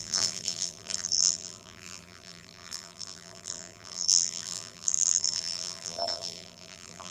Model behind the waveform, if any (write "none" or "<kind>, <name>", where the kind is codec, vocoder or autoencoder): vocoder, BigVGAN v2